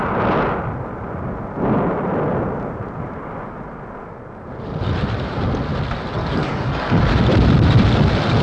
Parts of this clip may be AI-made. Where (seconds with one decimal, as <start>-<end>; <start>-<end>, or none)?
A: 6.2-7.0